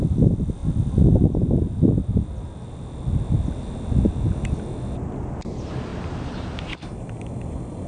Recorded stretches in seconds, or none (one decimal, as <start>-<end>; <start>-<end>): 0.0-5.9; 7.2-7.9